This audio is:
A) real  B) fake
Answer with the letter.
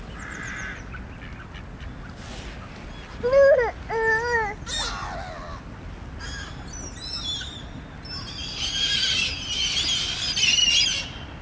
A